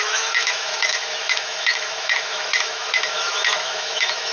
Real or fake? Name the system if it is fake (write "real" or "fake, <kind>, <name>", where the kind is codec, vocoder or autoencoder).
fake, autoencoder, DAC-VAE